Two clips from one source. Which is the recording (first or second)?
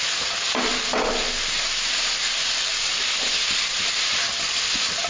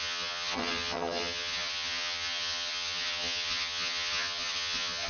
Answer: first